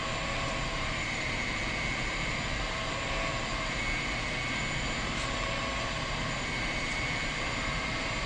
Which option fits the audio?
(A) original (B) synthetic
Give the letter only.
B